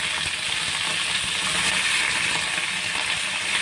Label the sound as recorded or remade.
recorded